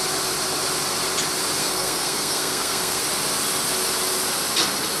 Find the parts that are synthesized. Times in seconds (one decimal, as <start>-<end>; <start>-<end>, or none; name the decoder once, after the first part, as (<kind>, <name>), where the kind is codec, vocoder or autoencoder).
1.6-3.0 (codec, SNAC)